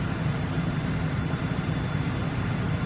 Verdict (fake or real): real